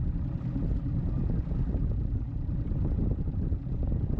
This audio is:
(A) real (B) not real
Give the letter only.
A